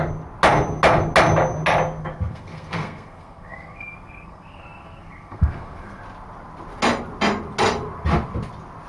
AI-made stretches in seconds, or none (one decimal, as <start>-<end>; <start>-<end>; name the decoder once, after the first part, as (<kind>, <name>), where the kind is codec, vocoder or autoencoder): 2.0-6.0 (codec, SNAC)